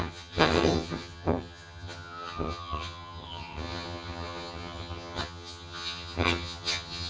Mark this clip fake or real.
fake